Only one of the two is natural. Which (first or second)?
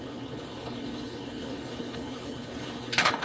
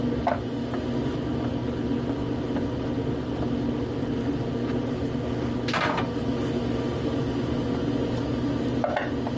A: second